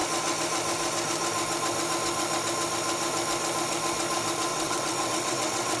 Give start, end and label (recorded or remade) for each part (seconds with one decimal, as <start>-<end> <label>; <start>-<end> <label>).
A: 0.0-4.5 recorded; 4.5-5.8 remade